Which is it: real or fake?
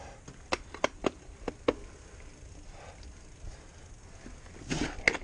real